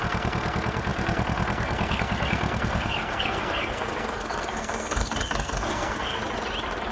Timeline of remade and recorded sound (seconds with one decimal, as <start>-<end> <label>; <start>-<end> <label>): 0.0-6.2 remade; 6.2-6.9 recorded

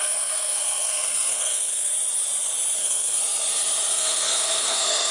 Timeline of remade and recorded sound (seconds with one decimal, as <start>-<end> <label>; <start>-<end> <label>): 0.0-1.9 remade; 1.9-2.8 recorded; 2.8-3.2 remade; 3.2-3.9 recorded; 3.9-5.1 remade

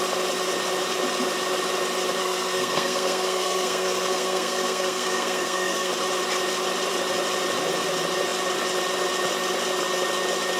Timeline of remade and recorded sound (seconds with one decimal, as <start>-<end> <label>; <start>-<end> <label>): 0.0-2.2 recorded; 2.2-5.9 remade; 5.9-10.6 recorded

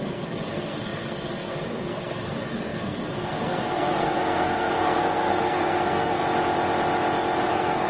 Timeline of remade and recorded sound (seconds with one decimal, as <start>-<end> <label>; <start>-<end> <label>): 0.0-6.2 remade; 6.2-7.4 recorded; 7.4-7.9 remade

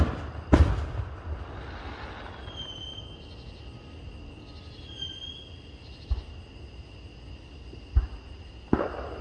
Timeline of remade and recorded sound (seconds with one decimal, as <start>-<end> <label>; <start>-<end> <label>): 0.0-9.2 recorded